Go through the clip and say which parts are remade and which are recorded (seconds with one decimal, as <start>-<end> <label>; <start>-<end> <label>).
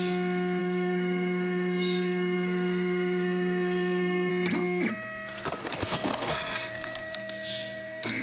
0.0-0.6 recorded; 0.6-4.3 remade; 4.3-5.3 recorded; 5.3-8.2 remade